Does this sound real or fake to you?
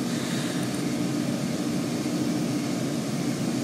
real